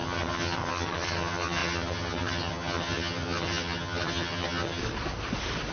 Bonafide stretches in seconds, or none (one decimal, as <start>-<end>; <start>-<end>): 4.8-5.7